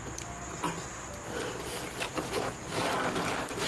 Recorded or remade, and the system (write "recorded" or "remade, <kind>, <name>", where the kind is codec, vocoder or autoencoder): recorded